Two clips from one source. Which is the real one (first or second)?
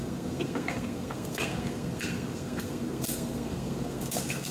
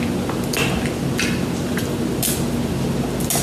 second